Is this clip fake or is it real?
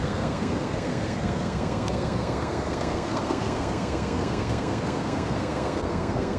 fake